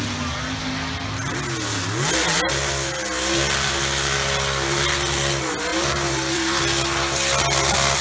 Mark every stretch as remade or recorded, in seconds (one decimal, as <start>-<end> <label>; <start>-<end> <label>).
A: 0.0-5.7 recorded; 5.7-6.6 remade; 6.6-8.0 recorded